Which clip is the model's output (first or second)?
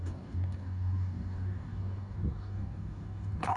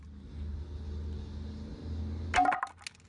first